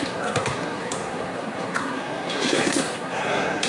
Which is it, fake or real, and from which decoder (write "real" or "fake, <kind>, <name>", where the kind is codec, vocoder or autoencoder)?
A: fake, codec, SNAC